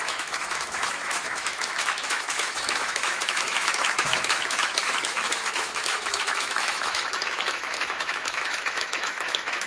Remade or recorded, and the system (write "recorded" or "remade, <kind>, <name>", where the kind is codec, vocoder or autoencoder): remade, autoencoder, DAC-VAE